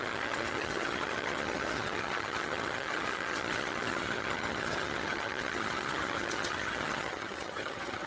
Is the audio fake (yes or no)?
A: yes